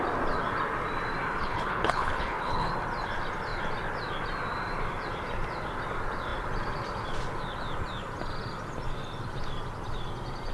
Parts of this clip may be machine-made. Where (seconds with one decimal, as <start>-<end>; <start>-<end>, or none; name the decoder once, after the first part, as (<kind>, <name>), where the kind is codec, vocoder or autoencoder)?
1.4-2.7 (codec, HILCodec)